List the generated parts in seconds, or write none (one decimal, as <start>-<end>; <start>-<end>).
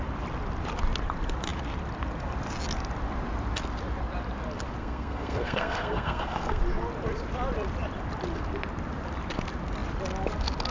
4.8-6.6